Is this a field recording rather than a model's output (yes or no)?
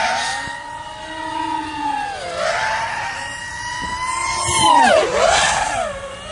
yes